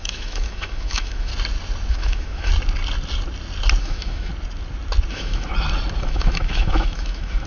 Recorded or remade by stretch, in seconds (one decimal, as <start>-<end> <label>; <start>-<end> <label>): 0.0-1.3 remade; 1.3-1.9 recorded; 1.9-2.5 remade; 2.5-3.8 recorded; 3.8-4.3 remade; 4.3-5.1 recorded; 5.1-5.5 remade; 5.5-6.0 recorded; 6.0-7.5 remade